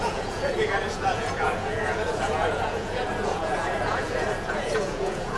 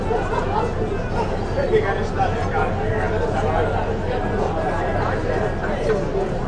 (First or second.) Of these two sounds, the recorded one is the second